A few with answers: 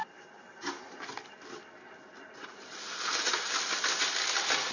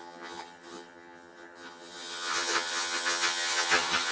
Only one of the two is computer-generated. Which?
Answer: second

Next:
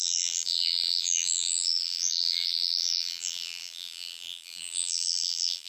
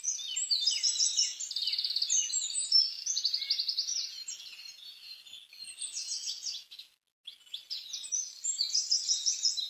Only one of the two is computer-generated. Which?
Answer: first